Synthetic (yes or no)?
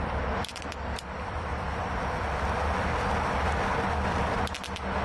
no